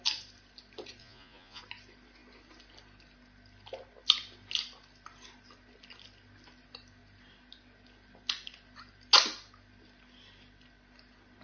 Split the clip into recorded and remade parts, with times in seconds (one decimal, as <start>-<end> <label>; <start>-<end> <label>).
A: 0.0-1.0 recorded; 1.0-1.6 remade; 1.6-11.4 recorded